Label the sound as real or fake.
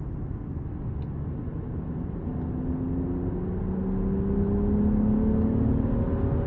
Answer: real